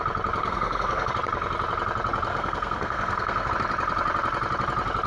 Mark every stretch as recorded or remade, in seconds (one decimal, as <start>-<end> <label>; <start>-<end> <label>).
0.0-0.4 recorded; 0.4-1.1 remade; 1.1-2.3 recorded; 2.3-3.5 remade; 3.5-5.1 recorded